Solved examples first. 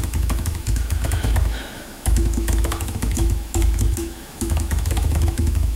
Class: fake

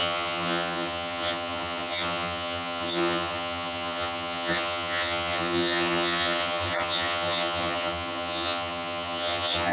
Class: fake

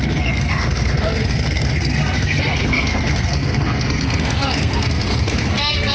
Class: fake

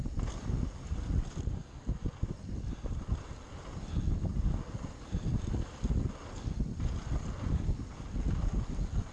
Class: real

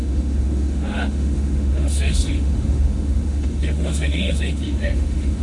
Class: fake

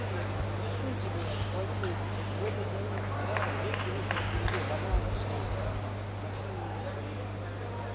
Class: real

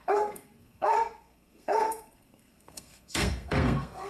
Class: fake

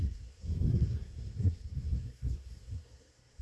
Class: fake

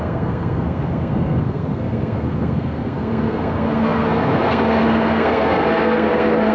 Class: fake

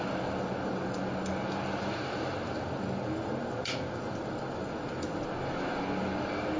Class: real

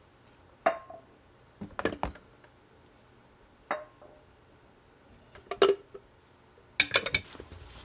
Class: real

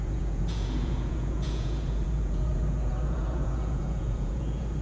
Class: fake